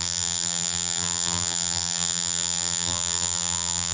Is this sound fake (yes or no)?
yes